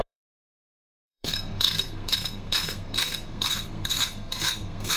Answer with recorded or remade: remade